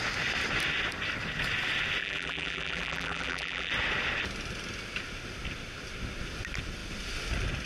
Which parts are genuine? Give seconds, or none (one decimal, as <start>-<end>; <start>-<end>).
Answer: 0.0-2.0; 3.7-7.7

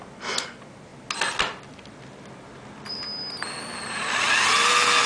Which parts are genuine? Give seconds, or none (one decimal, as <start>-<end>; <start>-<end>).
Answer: 0.0-5.1

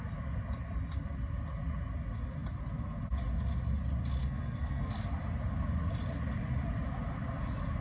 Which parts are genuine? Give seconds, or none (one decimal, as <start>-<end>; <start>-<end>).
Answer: 0.0-4.2; 4.9-7.8